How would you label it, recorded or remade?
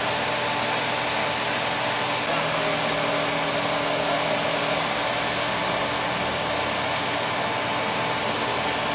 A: recorded